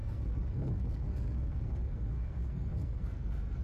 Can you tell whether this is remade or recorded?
remade